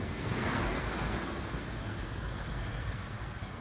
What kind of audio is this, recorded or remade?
remade